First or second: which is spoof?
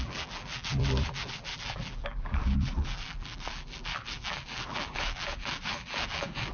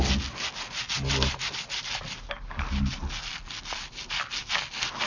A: first